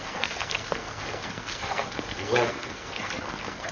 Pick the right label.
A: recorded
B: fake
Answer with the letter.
B